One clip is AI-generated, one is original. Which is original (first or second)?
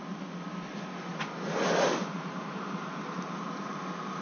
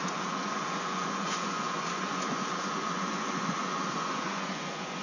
first